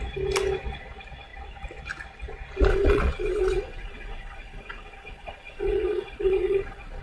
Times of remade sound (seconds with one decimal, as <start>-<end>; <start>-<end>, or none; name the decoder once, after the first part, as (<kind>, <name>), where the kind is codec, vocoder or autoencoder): 2.7-7.0 (vocoder, Vocos)

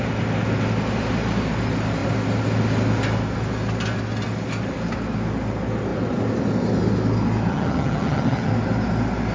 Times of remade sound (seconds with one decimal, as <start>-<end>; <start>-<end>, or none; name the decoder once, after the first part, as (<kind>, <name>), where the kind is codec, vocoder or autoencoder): 7.5-8.5 (vocoder, HiFi-GAN)

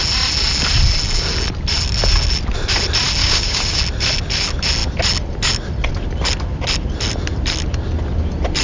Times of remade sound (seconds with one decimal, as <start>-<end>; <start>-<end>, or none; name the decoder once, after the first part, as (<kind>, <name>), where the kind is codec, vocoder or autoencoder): 3.2-3.8 (codec, DAC)

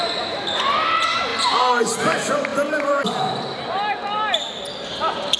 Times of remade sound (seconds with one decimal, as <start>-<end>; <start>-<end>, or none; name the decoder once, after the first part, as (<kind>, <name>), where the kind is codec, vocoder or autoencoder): none

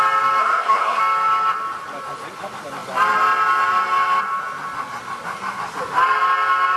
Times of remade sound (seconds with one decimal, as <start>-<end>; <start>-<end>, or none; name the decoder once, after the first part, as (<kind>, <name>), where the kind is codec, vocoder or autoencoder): 0.4-1.0 (codec, SNAC)

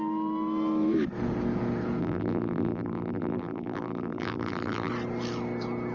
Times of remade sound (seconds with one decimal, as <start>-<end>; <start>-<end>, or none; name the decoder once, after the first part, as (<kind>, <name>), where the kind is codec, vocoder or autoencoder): 2.0-4.9 (vocoder, BigVGAN v2)

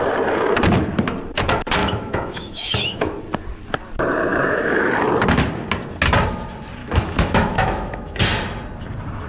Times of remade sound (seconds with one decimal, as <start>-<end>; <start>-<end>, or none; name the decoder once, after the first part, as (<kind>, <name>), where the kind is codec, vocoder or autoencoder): 1.8-3.2 (autoencoder, DAC-VAE); 4.3-4.9; 6.8-8.2

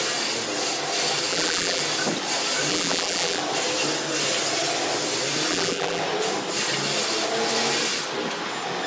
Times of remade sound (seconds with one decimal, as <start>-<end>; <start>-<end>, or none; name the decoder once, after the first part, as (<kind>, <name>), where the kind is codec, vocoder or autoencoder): 1.3-1.8 (vocoder, BigVGAN v2); 2.7-3.4; 5.5-6.0